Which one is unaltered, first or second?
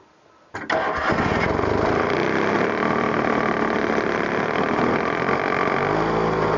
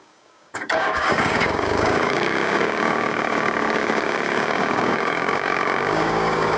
first